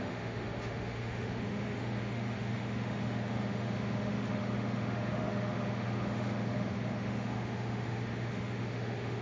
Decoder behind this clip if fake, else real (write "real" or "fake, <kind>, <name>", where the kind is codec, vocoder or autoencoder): fake, autoencoder, DAC-VAE